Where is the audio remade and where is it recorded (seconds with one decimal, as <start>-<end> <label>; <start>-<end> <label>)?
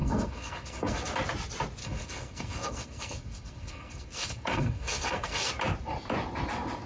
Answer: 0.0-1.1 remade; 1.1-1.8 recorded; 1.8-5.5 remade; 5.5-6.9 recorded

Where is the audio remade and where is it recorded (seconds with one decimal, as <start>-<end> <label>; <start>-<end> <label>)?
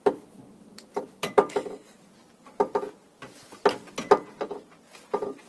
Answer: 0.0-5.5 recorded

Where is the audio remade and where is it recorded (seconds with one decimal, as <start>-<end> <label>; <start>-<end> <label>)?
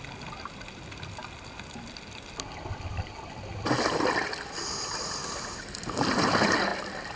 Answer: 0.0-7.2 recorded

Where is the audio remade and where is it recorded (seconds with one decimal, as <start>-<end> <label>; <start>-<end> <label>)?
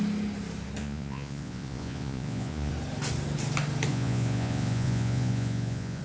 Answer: 0.0-0.8 recorded; 0.8-2.7 remade; 2.7-3.9 recorded; 3.9-6.0 remade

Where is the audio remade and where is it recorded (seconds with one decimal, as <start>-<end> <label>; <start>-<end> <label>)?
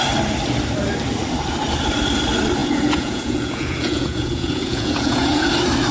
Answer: 0.0-2.6 recorded; 2.6-5.5 remade; 5.5-5.9 recorded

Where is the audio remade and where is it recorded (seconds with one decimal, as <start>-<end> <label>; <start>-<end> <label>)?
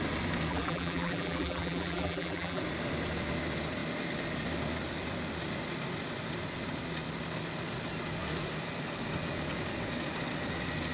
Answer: 0.0-0.5 recorded; 0.5-2.6 remade; 2.6-10.9 recorded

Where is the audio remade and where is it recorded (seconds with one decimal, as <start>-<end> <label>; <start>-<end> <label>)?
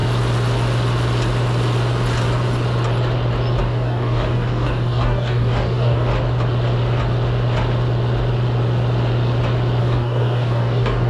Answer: 0.0-3.6 recorded; 3.6-6.1 remade; 6.1-9.8 recorded; 9.8-11.1 remade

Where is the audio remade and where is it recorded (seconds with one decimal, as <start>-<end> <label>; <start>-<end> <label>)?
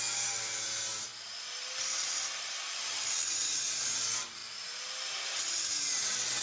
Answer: 0.0-6.4 recorded